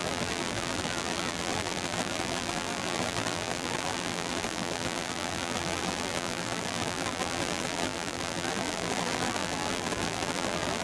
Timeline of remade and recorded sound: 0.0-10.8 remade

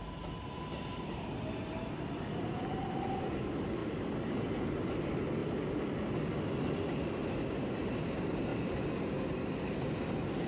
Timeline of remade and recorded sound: 0.0-10.5 recorded

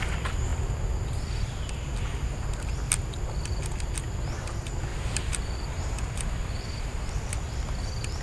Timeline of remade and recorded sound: 0.0-4.9 recorded; 4.9-7.3 remade; 7.3-8.2 recorded

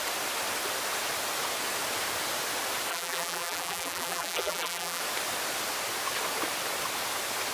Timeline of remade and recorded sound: 0.0-2.9 recorded; 2.9-5.0 remade; 5.0-7.5 recorded

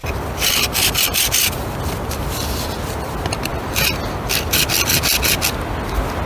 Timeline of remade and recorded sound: 0.0-0.9 remade; 0.9-6.3 recorded

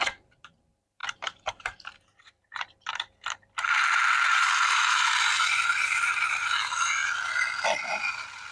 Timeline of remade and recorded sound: 0.0-7.0 remade; 7.0-7.9 recorded; 7.9-8.5 remade

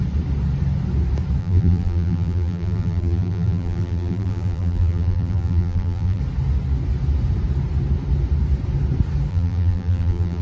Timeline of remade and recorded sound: 0.0-1.4 recorded; 1.4-6.2 remade; 6.2-9.3 recorded; 9.3-10.4 remade

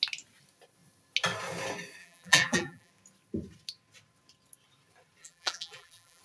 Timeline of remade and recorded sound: 0.0-2.0 recorded; 2.0-2.9 remade; 2.9-5.2 recorded; 5.2-6.2 remade